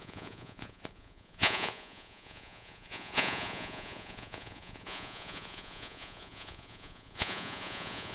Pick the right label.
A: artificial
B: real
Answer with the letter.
A